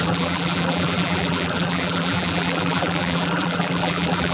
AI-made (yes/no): yes